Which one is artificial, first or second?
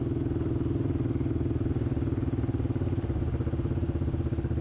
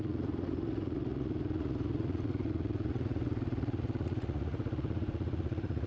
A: second